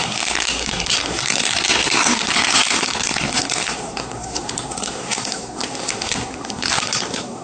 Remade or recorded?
remade